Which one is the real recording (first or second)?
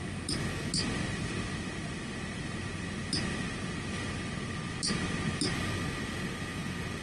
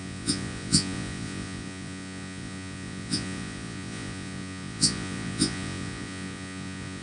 first